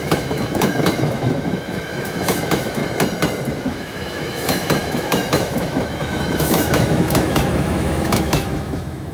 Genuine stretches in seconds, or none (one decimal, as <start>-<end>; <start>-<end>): 2.8-3.6